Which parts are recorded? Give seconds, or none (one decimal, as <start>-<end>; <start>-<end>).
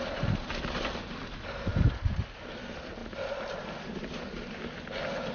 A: 0.0-5.3